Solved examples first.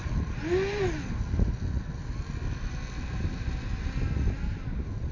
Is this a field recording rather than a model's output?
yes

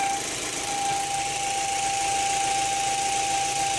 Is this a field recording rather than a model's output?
yes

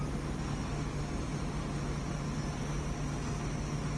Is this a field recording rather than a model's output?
yes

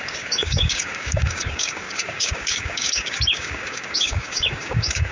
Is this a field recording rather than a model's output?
no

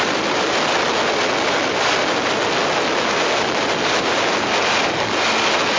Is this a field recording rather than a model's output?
yes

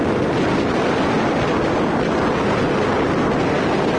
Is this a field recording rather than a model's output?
yes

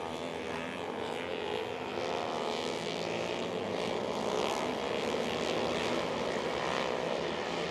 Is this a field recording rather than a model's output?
yes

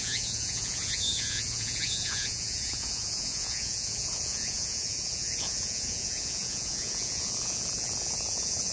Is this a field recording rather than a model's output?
no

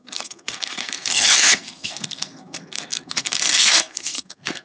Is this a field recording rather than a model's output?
no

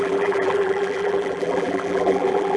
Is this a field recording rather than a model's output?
no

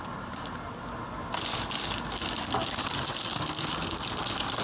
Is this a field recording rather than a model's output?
yes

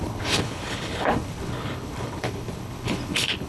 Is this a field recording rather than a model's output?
no